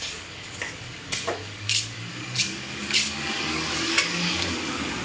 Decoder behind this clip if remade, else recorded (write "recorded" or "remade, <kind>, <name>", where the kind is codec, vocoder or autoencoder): remade, codec, DAC